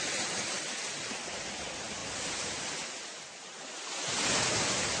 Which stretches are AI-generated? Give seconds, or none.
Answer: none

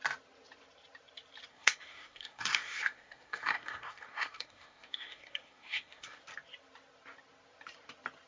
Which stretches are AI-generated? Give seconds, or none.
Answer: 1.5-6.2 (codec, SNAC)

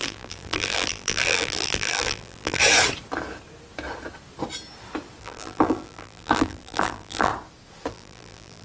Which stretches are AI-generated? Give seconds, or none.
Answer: 0.0-2.6 (vocoder, BigVGAN v2); 5.2-7.3; 7.9-8.6